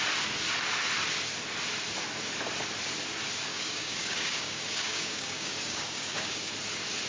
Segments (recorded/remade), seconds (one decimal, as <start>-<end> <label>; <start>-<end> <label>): 0.0-3.5 recorded; 3.5-6.5 remade; 6.5-7.1 recorded

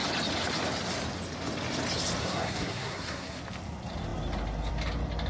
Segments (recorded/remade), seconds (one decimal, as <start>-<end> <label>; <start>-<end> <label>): 0.0-2.2 recorded; 2.2-3.4 remade; 3.4-5.3 recorded

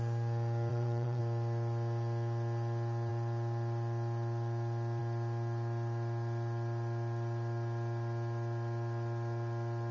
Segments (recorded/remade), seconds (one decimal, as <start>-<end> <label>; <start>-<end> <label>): 0.0-0.7 recorded; 0.7-1.2 remade; 1.2-9.9 recorded

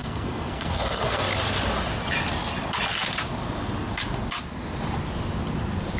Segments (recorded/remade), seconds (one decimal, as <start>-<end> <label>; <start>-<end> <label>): 0.0-1.2 remade; 1.2-6.0 recorded

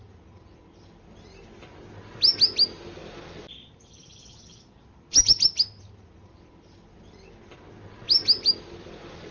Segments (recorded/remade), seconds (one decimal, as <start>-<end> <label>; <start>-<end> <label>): 0.0-9.3 recorded

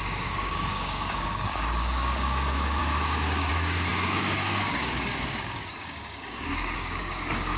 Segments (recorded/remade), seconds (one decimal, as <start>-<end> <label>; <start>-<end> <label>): 0.0-7.6 remade

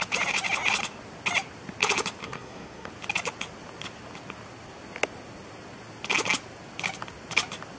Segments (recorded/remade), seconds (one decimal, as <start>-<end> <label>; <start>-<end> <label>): 0.0-2.2 recorded; 2.2-2.9 remade; 2.9-7.8 recorded

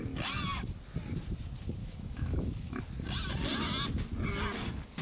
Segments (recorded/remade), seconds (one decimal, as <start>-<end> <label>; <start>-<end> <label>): 0.0-1.8 recorded; 1.8-2.8 remade; 2.8-5.0 recorded